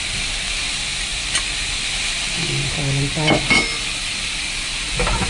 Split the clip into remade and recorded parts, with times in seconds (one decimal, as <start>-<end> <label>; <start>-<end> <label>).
0.0-5.3 recorded